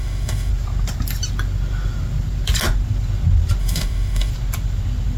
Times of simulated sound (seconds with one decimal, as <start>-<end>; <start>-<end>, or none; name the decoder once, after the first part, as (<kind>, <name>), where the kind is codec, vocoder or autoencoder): 0.0-0.5 (autoencoder, DAC-VAE); 3.6-4.3